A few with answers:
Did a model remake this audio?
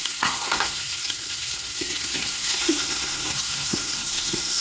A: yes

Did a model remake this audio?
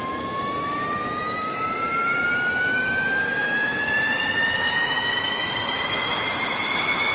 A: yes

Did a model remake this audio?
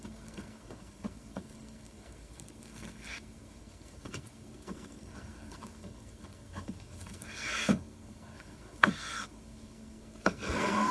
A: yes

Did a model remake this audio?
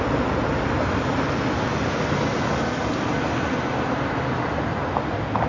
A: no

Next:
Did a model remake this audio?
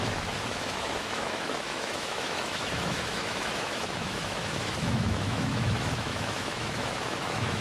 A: yes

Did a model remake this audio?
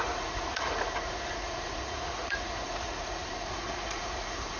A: yes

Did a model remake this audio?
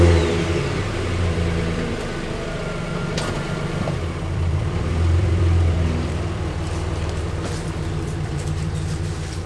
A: yes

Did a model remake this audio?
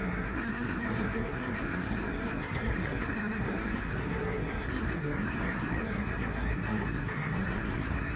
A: yes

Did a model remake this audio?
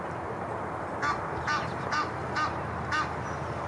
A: no